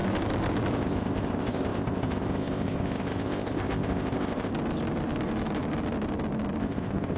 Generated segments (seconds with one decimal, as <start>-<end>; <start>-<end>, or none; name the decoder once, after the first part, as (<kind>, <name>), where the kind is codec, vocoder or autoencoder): 0.7-4.5 (codec, ZipCodec); 6.6-7.2